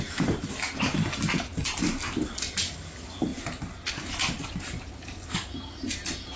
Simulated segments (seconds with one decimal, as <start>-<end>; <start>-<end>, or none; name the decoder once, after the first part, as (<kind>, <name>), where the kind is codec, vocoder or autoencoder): none